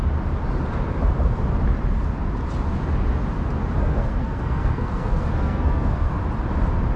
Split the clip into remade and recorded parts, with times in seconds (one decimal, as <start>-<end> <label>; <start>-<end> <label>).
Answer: 0.0-3.8 recorded; 3.8-6.2 remade; 6.2-7.0 recorded